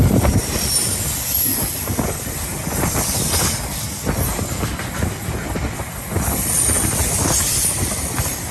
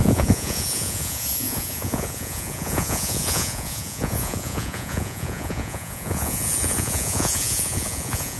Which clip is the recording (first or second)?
first